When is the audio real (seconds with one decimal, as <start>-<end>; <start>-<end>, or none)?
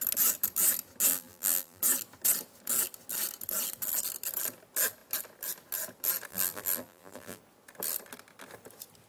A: 0.0-1.1; 1.8-6.3; 7.4-9.1